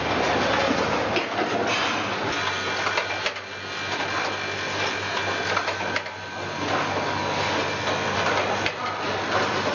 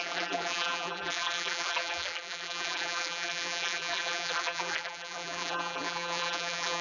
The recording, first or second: first